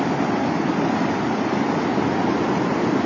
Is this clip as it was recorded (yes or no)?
yes